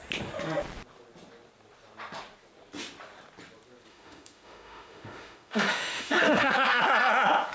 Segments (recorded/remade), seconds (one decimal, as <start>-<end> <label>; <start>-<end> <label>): 0.0-3.9 recorded; 3.9-6.8 remade; 6.8-7.5 recorded